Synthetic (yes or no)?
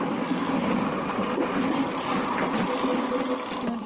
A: no